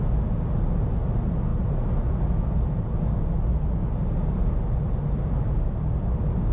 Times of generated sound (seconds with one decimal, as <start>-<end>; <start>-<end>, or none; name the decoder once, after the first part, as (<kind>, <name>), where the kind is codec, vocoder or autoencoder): none